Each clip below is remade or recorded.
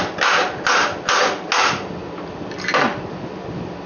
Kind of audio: recorded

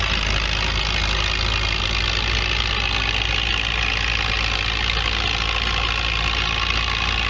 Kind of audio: recorded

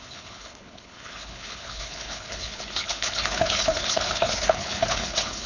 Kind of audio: remade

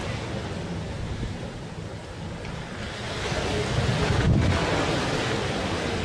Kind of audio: recorded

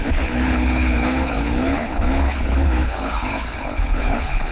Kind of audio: remade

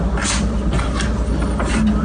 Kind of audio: recorded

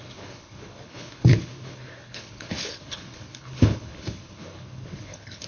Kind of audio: remade